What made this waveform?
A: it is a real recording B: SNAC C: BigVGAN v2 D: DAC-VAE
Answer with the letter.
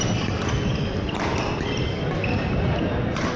A